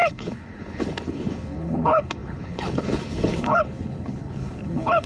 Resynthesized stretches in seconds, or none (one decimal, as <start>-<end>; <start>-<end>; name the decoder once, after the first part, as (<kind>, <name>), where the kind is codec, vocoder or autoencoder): 0.0-5.1 (codec, HILCodec)